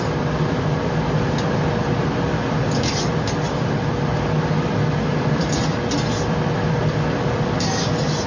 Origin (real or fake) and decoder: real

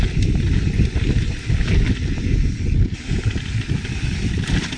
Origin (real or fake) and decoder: real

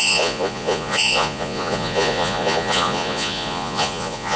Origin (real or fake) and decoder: fake, vocoder, Vocos